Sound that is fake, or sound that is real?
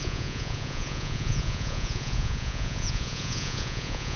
fake